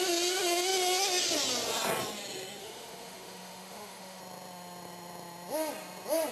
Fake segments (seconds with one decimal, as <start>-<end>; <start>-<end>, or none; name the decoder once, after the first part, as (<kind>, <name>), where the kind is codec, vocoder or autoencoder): 2.6-4.2 (autoencoder, DAC-VAE)